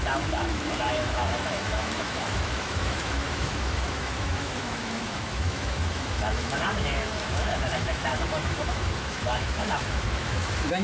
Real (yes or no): no